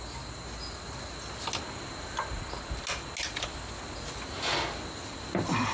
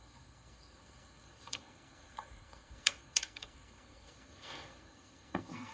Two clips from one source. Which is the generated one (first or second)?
second